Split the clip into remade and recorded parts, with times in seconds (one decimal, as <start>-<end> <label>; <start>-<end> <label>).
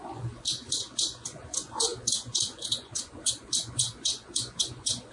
0.0-5.1 remade